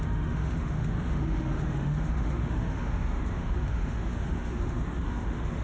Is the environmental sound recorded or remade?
remade